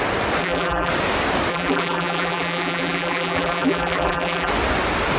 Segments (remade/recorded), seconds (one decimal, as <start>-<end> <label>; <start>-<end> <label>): 0.0-0.4 recorded; 0.4-0.9 remade; 0.9-1.5 recorded; 1.5-4.5 remade; 4.5-5.2 recorded